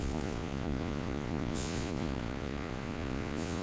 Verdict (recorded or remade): remade